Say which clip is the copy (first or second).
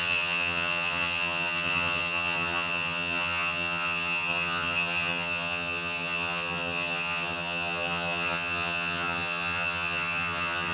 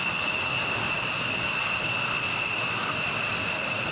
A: first